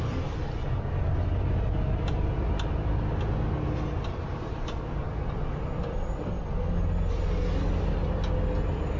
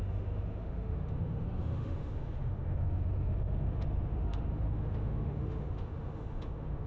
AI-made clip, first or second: second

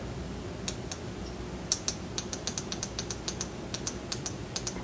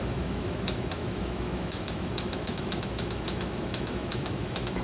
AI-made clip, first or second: second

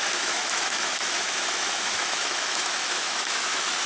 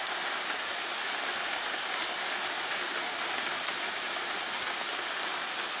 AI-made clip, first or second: first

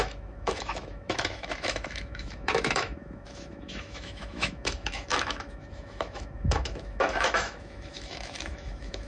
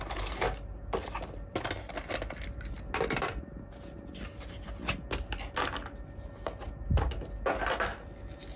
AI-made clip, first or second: first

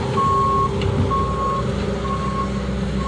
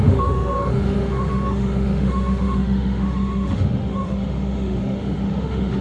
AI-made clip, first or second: second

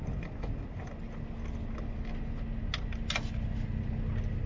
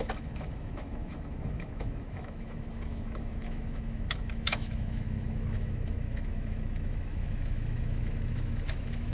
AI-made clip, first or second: second